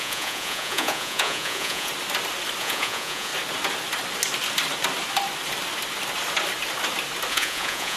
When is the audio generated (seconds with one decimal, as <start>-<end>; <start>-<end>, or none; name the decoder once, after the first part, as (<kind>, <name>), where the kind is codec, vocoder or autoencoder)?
0.0-1.9 (vocoder, Vocos); 2.6-3.3; 7.3-8.0